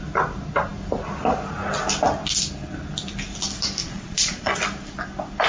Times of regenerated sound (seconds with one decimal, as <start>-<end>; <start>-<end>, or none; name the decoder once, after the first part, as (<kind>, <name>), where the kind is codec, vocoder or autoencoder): 3.8-4.6 (vocoder, Vocos)